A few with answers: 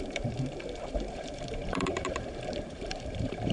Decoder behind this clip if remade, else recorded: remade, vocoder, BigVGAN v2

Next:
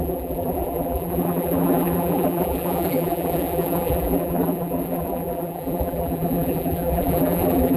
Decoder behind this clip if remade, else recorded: remade, vocoder, BigVGAN v2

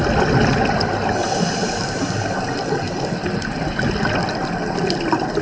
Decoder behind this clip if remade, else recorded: recorded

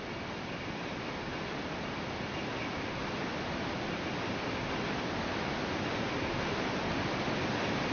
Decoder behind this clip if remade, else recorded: recorded